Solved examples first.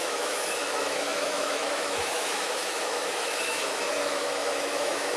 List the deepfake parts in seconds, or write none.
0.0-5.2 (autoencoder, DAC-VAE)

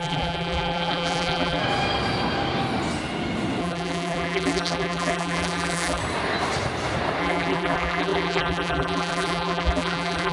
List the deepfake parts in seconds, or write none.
0.0-1.6 (vocoder, BigVGAN v2); 3.6-6.0; 7.2-10.3